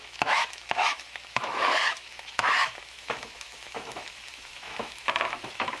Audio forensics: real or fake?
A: fake